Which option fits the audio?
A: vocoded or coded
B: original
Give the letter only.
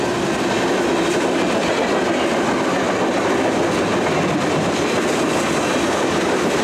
B